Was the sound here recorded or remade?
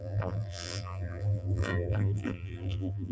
remade